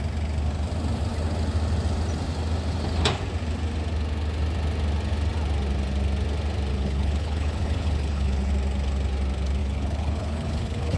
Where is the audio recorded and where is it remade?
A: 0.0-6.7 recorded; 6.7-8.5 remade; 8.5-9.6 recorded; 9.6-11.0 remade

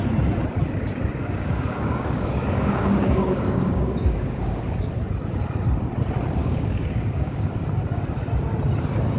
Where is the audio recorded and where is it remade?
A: 0.0-1.2 recorded; 1.2-4.9 remade; 4.9-6.4 recorded; 6.4-7.5 remade; 7.5-9.2 recorded

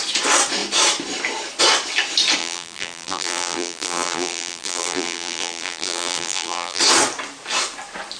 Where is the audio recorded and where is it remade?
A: 0.0-2.4 recorded; 2.4-6.8 remade; 6.8-8.2 recorded

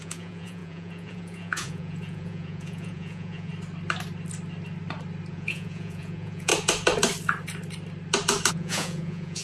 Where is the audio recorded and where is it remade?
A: 0.0-3.5 remade; 3.5-5.3 recorded; 5.3-6.5 remade; 6.5-8.5 recorded; 8.5-9.4 remade

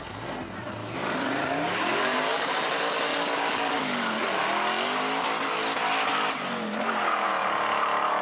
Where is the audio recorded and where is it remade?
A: 0.0-0.8 recorded; 0.8-2.5 remade; 2.5-3.1 recorded; 3.1-4.2 remade; 4.2-8.2 recorded

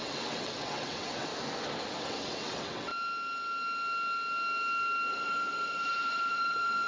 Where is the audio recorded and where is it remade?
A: 0.0-1.3 remade; 1.3-2.0 recorded; 2.0-2.9 remade; 2.9-5.1 recorded; 5.1-6.9 remade

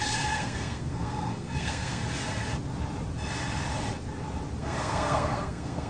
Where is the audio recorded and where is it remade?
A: 0.0-2.0 remade; 2.0-4.6 recorded; 4.6-5.9 remade

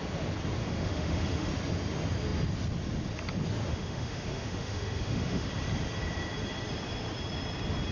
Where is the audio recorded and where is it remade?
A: 0.0-0.6 recorded; 0.6-1.5 remade; 1.5-3.7 recorded; 3.7-5.5 remade; 5.5-7.9 recorded